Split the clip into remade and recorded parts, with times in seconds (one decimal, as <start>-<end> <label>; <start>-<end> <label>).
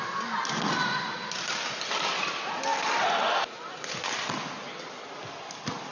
0.0-5.9 recorded